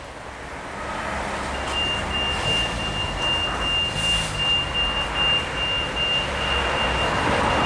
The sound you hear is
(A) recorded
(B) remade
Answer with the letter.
A